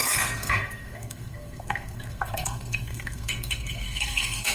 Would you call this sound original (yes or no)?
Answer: no